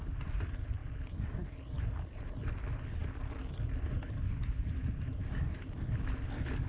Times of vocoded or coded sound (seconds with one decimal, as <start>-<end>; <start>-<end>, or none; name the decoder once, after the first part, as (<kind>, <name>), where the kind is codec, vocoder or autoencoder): none